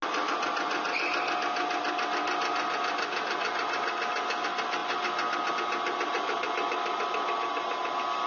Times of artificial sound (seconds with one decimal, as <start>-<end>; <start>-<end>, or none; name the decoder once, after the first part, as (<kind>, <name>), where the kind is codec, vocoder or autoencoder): none